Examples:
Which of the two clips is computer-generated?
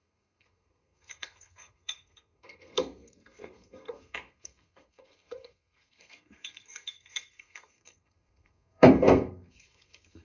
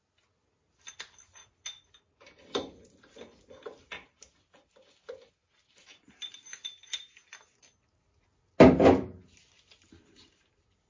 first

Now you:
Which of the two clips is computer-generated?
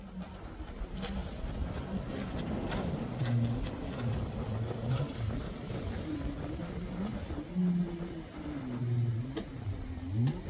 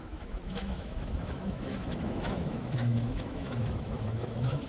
second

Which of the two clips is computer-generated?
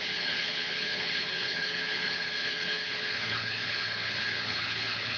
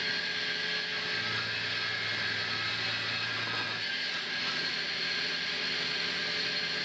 first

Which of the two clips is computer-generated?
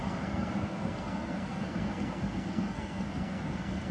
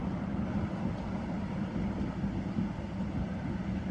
first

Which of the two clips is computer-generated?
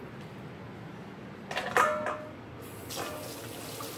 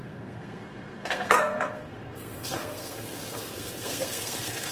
second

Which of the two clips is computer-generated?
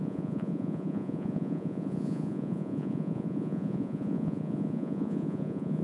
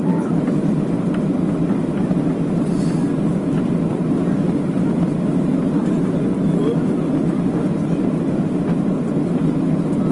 first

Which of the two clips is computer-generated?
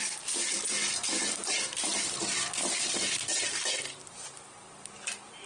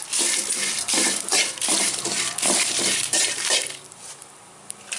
second